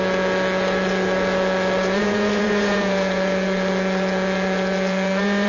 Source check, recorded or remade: remade